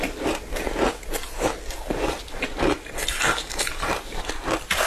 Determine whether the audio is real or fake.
real